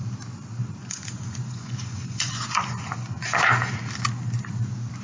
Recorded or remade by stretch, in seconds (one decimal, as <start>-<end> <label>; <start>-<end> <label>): 0.0-0.8 recorded; 0.8-3.8 remade; 3.8-5.0 recorded